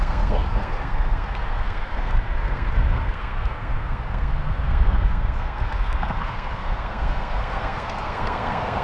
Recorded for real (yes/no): no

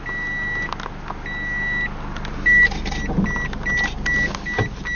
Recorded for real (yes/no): yes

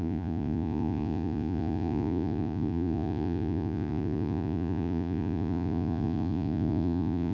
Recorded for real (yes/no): no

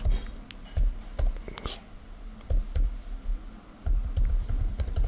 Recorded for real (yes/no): yes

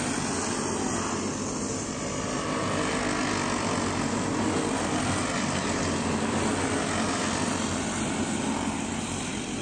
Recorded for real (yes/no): yes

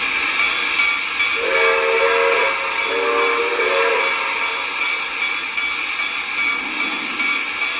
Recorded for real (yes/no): yes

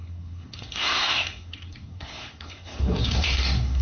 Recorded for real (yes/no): no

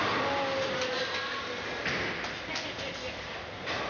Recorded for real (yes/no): yes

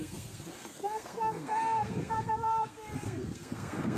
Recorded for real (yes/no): no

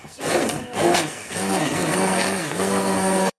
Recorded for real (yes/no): no